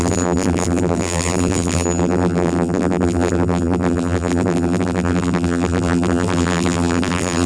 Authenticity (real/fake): fake